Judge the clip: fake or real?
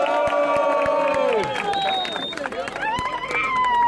real